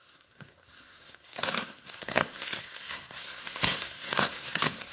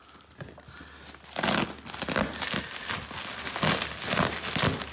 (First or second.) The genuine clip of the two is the second